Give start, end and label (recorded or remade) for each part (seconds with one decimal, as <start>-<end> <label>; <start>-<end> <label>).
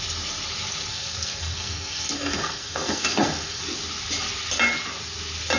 0.0-0.9 recorded; 0.9-3.6 remade; 3.6-5.6 recorded